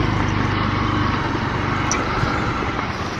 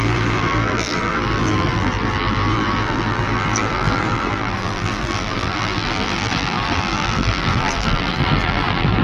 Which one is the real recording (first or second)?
first